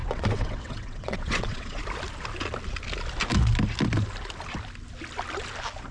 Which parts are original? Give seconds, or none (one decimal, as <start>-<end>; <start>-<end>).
1.8-5.9